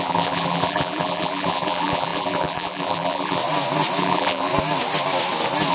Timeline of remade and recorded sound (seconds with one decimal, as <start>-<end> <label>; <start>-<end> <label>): 0.0-3.4 remade; 3.4-4.0 recorded; 4.0-4.5 remade; 4.5-5.7 recorded